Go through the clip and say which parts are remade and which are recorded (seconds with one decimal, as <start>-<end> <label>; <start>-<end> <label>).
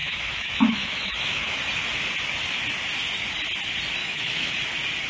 0.0-1.6 remade; 1.6-4.0 recorded; 4.0-4.5 remade; 4.5-5.1 recorded